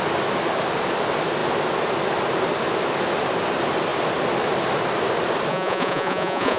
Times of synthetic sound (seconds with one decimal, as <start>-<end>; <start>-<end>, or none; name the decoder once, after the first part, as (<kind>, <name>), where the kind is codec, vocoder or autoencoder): 5.5-6.6 (vocoder, Vocos)